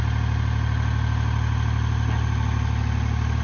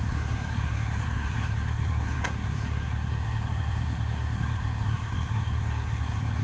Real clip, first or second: first